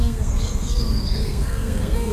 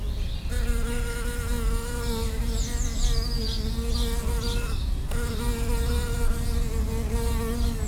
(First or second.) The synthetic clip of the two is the first